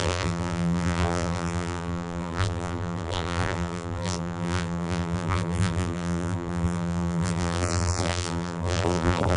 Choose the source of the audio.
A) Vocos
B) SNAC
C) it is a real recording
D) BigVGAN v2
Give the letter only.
D